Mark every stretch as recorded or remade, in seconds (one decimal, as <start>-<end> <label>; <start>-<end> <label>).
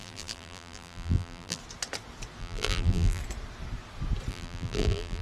0.0-1.6 remade; 1.6-2.4 recorded; 2.4-3.2 remade; 3.2-4.3 recorded; 4.3-5.2 remade